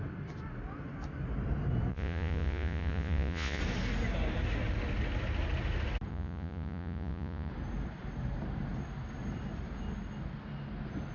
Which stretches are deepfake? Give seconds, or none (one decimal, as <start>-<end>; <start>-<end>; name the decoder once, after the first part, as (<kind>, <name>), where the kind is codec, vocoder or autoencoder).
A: 1.9-3.6 (vocoder, Vocos); 6.1-7.5